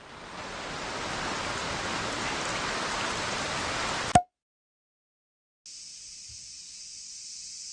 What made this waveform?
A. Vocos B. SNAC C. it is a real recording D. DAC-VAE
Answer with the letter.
C